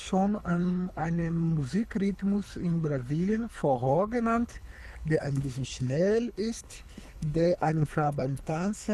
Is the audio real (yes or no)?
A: no